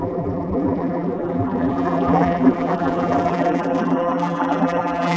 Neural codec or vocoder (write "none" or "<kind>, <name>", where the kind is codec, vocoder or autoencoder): vocoder, BigVGAN v2